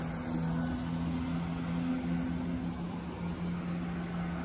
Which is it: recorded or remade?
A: recorded